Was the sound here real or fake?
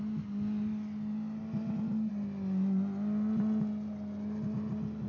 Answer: real